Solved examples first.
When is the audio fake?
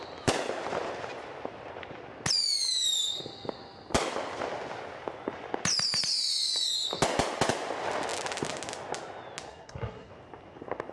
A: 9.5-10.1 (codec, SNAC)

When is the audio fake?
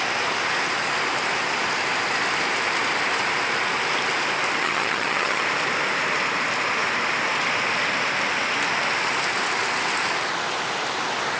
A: 4.6-5.4 (vocoder, HiFi-GAN)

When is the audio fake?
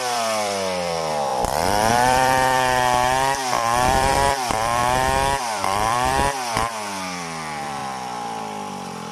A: 0.0-4.8 (vocoder, BigVGAN v2); 5.4-7.8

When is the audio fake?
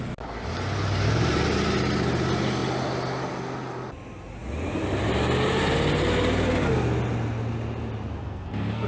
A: 8.2-8.9 (codec, SNAC)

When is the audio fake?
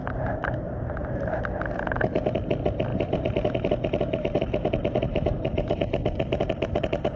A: 0.0-1.4 (vocoder, BigVGAN v2); 2.9-7.2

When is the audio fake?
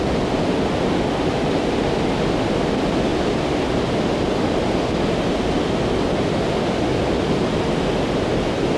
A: none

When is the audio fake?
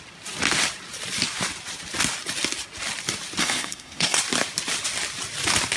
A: 3.4-4.2 (codec, SNAC)